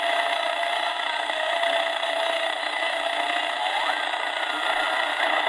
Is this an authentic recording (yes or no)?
yes